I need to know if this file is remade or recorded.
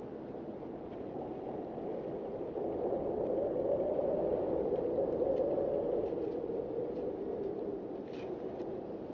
recorded